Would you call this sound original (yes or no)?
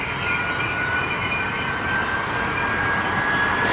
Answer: yes